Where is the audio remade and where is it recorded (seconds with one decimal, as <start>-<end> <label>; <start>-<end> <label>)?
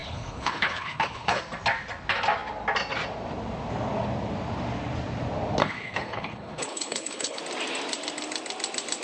0.0-1.4 remade; 1.4-5.6 recorded; 5.6-7.4 remade; 7.4-9.0 recorded